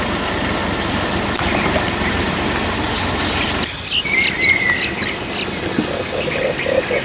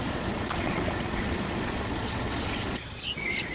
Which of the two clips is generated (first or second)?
second